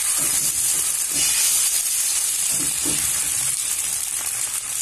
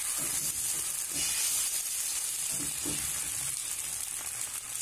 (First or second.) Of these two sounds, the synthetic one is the first